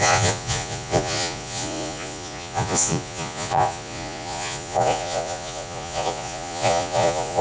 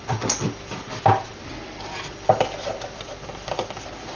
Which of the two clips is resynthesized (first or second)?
first